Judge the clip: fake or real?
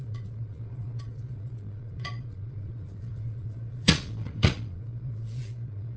fake